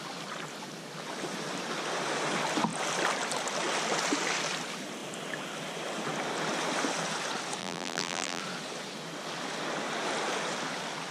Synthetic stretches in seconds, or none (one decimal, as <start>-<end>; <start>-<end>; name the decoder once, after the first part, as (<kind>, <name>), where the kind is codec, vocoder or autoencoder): 7.6-8.4 (vocoder, BigVGAN v2)

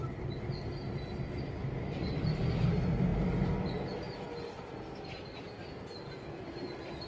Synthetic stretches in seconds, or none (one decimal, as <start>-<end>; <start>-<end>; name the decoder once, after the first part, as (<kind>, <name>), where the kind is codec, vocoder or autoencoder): none

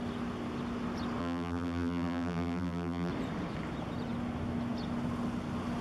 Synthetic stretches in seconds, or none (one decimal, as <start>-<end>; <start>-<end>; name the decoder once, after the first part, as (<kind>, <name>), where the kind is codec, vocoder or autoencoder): 1.2-3.1 (vocoder, BigVGAN v2)

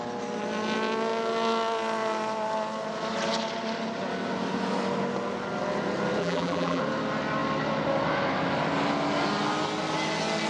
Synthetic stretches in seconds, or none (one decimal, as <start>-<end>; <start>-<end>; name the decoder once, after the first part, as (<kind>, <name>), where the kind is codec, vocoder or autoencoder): 6.2-6.8 (vocoder, BigVGAN v2)

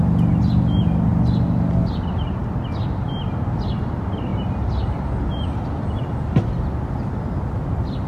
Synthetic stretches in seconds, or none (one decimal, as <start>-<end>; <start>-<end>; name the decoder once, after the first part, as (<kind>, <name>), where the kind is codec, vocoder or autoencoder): none

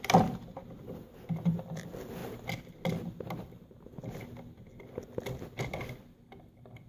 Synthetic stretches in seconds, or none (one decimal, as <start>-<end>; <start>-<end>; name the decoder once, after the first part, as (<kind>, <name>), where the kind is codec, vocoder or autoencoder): none

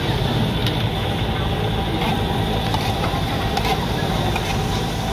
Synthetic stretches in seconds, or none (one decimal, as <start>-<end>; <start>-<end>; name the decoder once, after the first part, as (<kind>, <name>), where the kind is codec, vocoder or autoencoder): 0.0-0.6 (vocoder, BigVGAN v2); 1.2-5.1